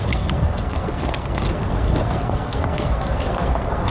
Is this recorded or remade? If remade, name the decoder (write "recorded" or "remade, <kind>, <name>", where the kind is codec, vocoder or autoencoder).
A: remade, codec, SNAC